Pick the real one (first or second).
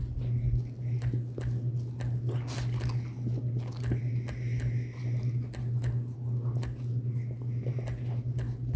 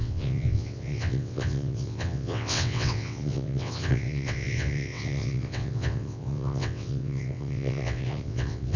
first